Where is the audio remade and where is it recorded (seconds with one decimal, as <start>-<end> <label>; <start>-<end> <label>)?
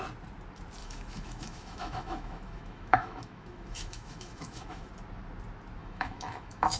0.0-0.8 recorded; 0.8-4.9 remade; 4.9-5.8 recorded; 5.8-6.8 remade